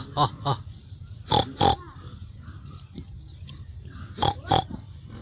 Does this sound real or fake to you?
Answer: fake